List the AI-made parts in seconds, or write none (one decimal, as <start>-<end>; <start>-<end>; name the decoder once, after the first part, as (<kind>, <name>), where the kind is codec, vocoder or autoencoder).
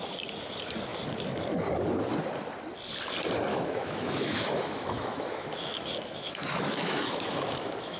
3.5-8.0 (autoencoder, DAC-VAE)